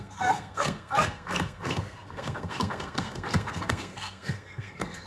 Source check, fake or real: fake